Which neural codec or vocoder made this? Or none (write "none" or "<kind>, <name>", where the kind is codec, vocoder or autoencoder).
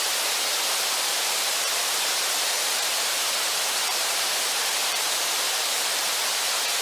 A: vocoder, BigVGAN v2